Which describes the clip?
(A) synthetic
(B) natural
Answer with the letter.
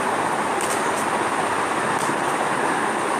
B